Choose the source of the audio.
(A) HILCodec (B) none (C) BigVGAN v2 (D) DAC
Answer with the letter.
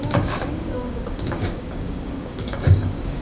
D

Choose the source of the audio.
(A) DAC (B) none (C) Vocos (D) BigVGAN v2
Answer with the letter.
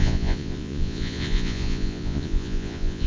C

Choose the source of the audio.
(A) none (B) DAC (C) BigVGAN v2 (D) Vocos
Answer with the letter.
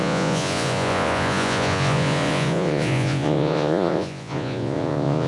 D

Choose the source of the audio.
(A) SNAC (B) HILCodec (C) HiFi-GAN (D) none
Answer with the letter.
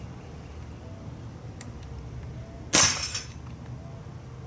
D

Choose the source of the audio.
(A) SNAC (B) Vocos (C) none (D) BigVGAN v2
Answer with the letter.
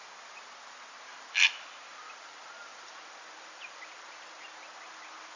C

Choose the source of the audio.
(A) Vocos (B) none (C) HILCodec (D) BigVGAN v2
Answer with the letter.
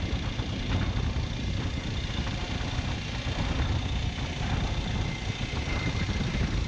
B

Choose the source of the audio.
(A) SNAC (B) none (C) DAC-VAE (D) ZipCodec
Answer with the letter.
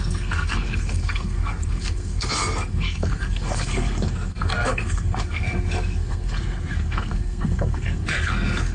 A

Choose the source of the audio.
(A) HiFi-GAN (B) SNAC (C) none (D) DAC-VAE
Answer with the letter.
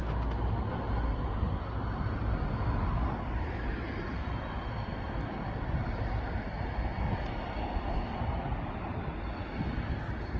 C